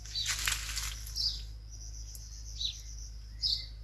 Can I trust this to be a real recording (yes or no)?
yes